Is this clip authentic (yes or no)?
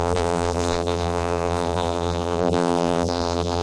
no